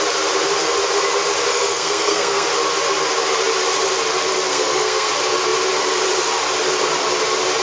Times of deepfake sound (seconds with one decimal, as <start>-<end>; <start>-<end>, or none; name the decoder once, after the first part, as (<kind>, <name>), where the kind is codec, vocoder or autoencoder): 1.5-2.5 (codec, SNAC); 4.5-5.1